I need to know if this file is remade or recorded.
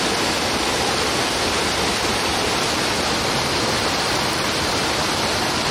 recorded